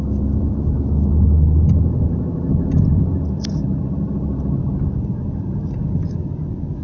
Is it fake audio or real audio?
real